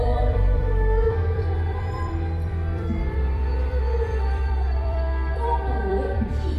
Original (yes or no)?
no